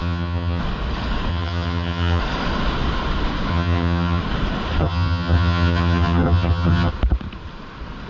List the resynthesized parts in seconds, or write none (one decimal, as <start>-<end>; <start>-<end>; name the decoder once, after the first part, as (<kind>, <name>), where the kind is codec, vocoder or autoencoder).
0.0-0.6 (vocoder, HiFi-GAN); 1.3-2.2; 3.5-4.2; 4.8-6.9